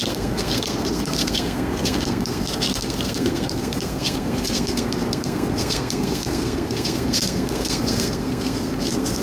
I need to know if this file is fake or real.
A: fake